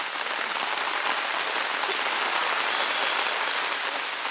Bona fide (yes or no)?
yes